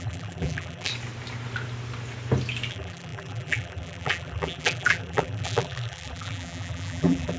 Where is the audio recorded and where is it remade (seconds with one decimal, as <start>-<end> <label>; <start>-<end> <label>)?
0.0-0.9 remade; 0.9-2.7 recorded; 2.7-7.4 remade